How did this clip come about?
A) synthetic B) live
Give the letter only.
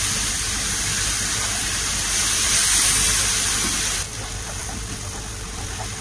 B